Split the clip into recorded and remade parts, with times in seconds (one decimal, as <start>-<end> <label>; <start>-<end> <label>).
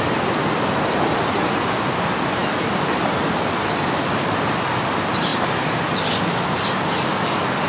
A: 0.0-7.7 recorded